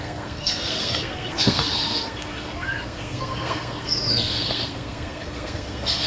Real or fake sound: fake